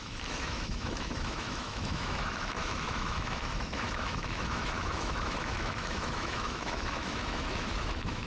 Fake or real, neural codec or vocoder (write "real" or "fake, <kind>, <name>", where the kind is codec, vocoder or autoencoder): fake, autoencoder, DAC-VAE